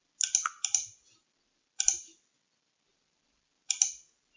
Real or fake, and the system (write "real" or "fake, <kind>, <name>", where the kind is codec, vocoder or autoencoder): real